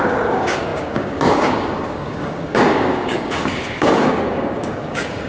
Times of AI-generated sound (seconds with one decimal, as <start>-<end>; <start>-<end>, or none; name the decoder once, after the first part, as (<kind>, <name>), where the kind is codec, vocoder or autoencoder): 0.0-5.3 (codec, DAC)